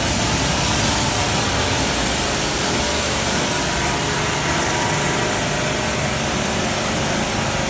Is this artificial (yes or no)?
no